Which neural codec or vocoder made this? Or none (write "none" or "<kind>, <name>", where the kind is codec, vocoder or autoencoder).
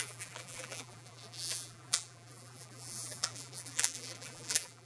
vocoder, BigVGAN v2